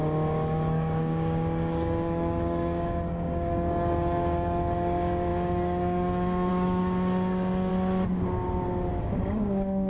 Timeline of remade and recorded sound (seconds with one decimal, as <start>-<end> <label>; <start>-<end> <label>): 0.0-7.7 remade; 7.7-8.9 recorded; 8.9-9.9 remade